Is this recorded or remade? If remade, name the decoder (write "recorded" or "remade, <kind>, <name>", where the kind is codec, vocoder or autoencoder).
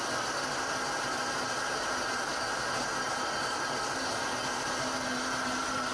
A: recorded